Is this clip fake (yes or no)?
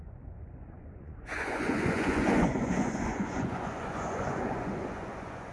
yes